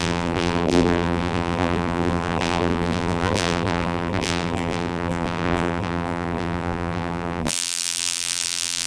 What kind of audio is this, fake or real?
fake